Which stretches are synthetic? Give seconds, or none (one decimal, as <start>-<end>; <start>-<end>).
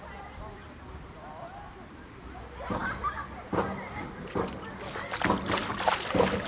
none